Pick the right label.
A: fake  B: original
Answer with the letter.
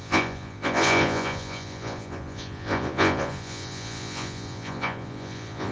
A